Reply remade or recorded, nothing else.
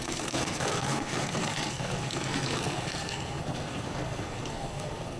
remade